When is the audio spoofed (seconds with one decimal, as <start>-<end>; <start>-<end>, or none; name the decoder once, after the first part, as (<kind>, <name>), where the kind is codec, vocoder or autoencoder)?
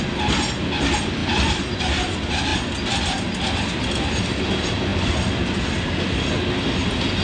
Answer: none